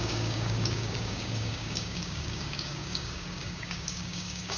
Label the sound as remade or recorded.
remade